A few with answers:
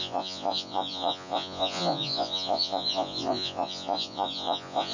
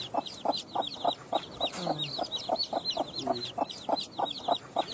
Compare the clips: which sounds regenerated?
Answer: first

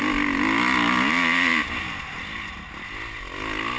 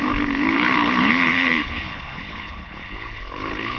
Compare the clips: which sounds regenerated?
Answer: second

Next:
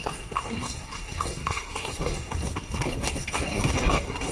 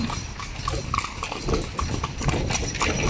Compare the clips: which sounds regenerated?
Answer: first